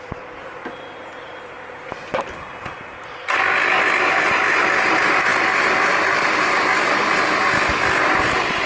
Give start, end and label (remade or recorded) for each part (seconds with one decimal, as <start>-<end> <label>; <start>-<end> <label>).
0.0-8.7 recorded